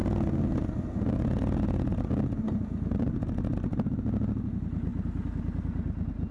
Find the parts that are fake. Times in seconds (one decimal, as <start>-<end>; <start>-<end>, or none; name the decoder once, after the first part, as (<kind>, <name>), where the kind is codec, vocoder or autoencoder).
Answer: 1.9-3.3 (vocoder, BigVGAN v2)